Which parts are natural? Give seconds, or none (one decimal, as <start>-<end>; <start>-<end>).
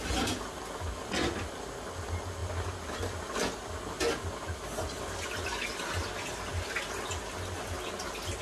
0.0-8.4